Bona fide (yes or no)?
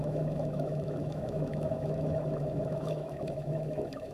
no